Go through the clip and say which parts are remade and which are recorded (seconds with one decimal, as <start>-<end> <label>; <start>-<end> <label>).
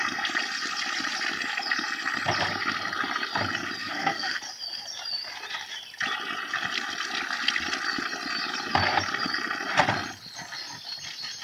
0.0-3.8 recorded; 3.8-4.4 remade; 4.4-11.4 recorded